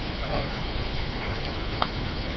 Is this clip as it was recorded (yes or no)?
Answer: no